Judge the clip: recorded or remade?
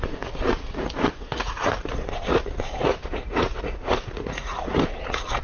remade